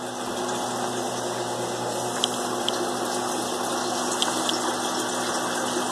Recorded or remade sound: recorded